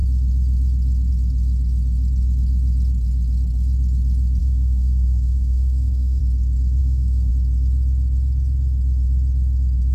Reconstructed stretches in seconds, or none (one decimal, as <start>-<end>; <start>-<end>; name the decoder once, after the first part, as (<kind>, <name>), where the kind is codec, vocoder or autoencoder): 4.4-6.2 (codec, SNAC); 6.8-7.3